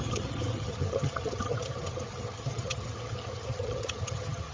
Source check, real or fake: fake